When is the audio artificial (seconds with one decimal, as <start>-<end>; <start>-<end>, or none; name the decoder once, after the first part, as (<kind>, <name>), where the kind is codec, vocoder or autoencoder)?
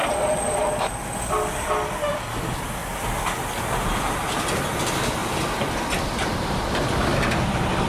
none